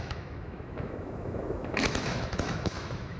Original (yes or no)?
no